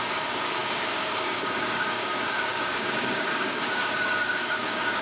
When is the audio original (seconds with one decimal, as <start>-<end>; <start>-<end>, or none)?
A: none